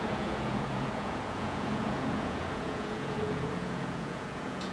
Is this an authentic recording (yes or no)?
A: no